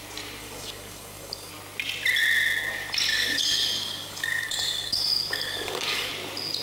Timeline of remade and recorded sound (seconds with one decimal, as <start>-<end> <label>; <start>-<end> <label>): 0.0-0.4 recorded; 0.4-1.5 remade; 1.5-3.1 recorded; 3.1-6.1 remade; 6.1-6.6 recorded

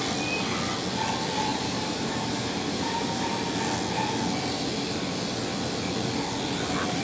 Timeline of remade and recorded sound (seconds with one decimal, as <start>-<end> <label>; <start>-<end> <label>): 0.0-1.5 recorded; 1.5-3.3 remade; 3.3-7.0 recorded

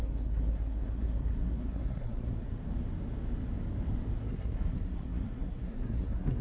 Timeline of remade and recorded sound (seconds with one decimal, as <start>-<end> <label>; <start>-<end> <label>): 0.0-2.3 remade; 2.3-4.2 recorded; 4.2-6.4 remade

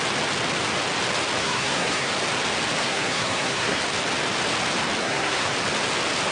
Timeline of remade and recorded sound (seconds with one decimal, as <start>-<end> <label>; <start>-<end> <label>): 0.0-1.4 recorded; 1.4-2.1 remade; 2.1-2.8 recorded; 2.8-3.8 remade; 3.8-5.0 recorded; 5.0-5.5 remade; 5.5-6.3 recorded

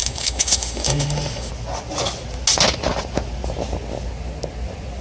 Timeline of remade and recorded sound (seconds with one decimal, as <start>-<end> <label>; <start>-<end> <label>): 0.0-1.5 remade; 1.5-5.0 recorded

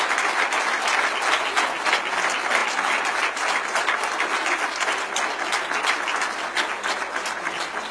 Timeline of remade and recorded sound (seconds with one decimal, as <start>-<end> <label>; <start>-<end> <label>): 0.0-7.9 recorded

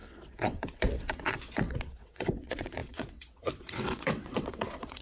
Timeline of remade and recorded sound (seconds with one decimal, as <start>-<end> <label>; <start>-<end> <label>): 0.0-5.0 remade